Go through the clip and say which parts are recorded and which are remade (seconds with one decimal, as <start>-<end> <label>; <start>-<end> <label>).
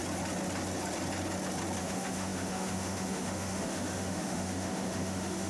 0.0-1.8 recorded; 1.8-5.5 remade